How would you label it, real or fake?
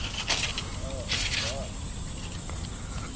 real